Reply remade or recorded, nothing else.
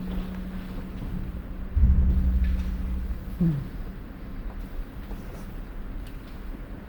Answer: recorded